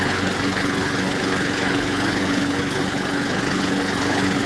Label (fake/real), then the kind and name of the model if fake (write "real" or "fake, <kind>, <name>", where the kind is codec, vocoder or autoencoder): fake, codec, HILCodec